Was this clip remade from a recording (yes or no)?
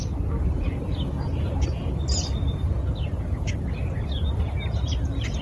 no